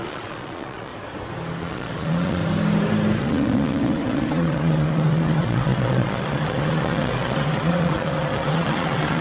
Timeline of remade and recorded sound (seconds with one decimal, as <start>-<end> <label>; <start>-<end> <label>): 0.0-0.9 remade; 0.9-1.6 recorded; 1.6-2.4 remade; 2.4-3.2 recorded; 3.2-9.2 remade